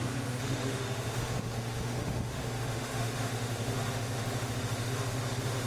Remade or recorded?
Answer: remade